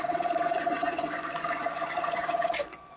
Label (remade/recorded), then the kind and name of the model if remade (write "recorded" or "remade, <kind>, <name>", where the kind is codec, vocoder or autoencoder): remade, vocoder, Vocos